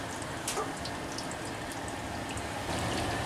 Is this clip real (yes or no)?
yes